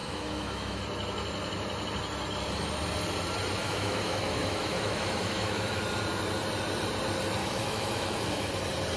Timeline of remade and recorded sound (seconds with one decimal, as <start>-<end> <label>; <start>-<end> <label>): 0.0-0.8 remade; 0.8-3.6 recorded; 3.6-5.8 remade; 5.8-7.4 recorded; 7.4-8.5 remade; 8.5-9.0 recorded